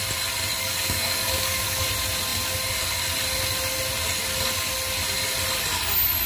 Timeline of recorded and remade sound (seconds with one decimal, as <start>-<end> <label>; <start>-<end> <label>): 0.0-0.6 recorded; 0.6-1.8 remade; 1.8-6.3 recorded

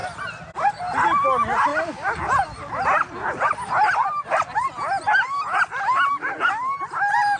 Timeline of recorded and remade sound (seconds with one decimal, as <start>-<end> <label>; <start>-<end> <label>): 0.0-7.4 recorded

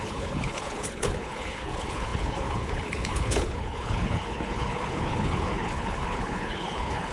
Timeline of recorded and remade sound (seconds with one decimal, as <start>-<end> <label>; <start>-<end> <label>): 0.0-7.1 remade

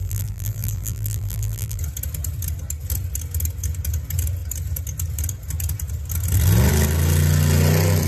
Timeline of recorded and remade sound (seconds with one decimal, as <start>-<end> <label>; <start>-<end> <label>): 0.0-1.8 remade; 1.8-8.1 recorded

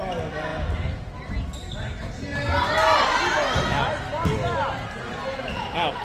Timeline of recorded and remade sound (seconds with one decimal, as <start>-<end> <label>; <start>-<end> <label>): 0.0-6.0 recorded

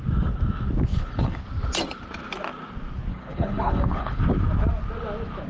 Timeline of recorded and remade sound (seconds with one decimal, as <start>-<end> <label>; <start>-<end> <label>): 0.0-0.9 recorded; 0.9-1.4 remade; 1.4-3.1 recorded; 3.1-4.2 remade; 4.2-5.5 recorded

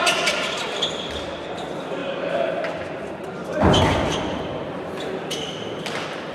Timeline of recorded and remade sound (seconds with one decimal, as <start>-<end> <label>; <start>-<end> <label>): 0.0-6.3 recorded